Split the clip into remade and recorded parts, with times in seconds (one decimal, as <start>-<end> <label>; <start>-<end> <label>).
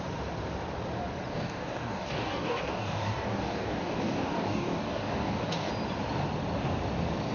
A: 0.0-1.3 recorded; 1.3-5.7 remade; 5.7-7.3 recorded